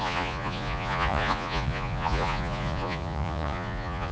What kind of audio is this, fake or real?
fake